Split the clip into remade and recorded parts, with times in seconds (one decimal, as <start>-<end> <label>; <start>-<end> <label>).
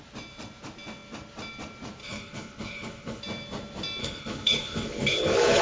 0.0-2.0 recorded; 2.0-3.2 remade; 3.2-4.0 recorded; 4.0-5.6 remade